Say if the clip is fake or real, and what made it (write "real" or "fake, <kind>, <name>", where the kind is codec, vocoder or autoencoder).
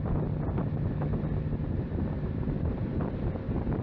real